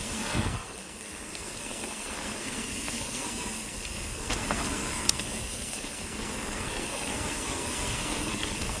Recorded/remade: remade